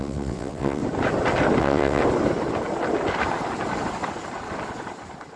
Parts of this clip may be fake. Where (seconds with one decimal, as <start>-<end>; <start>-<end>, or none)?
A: 0.0-0.8; 1.6-2.0